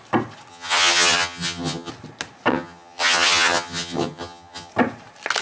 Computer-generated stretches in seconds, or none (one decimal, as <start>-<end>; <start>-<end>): 0.5-1.9; 2.5-4.7